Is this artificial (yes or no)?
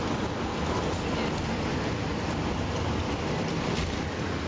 no